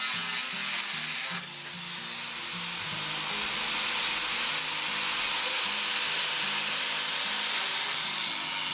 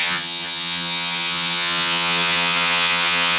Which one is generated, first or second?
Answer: second